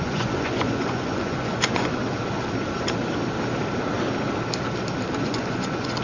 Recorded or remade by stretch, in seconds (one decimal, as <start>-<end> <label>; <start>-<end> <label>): 0.0-2.0 remade; 2.0-5.2 recorded; 5.2-6.0 remade